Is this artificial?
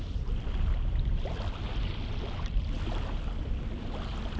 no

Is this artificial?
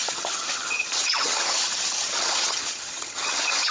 yes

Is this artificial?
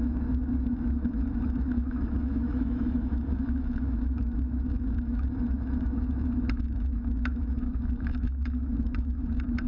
yes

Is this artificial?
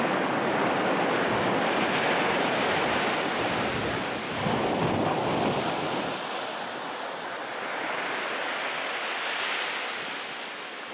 no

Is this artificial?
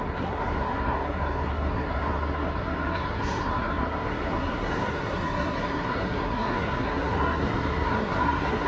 yes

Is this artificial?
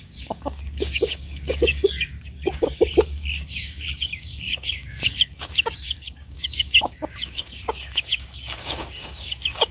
yes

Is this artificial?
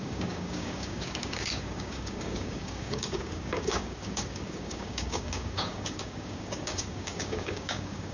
yes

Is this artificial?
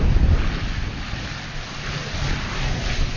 no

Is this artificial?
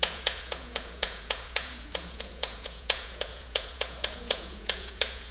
yes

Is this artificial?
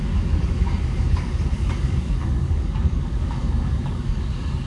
yes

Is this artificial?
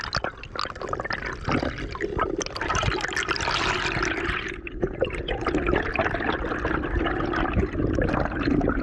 no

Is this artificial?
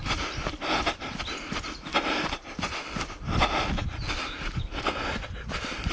no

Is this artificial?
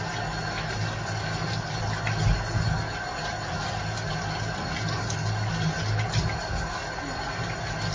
no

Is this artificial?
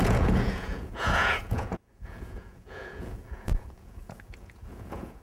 yes